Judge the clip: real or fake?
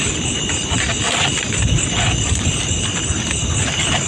real